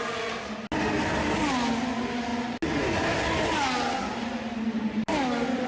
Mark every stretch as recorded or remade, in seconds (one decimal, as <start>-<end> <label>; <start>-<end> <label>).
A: 0.0-5.7 recorded